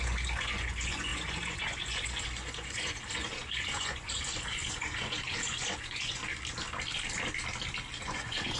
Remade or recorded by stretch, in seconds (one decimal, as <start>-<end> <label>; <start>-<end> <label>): 0.0-6.2 remade; 6.2-8.0 recorded; 8.0-8.6 remade